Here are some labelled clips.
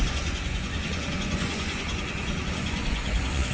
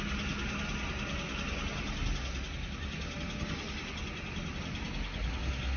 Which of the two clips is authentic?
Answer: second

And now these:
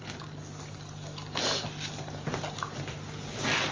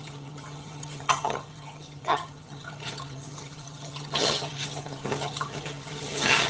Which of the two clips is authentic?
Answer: first